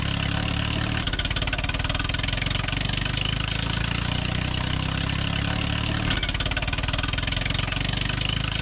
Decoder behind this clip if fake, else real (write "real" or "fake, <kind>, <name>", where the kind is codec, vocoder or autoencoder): real